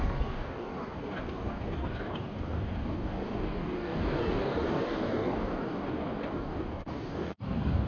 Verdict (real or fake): fake